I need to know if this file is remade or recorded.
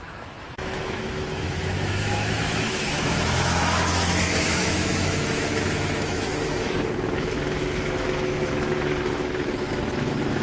remade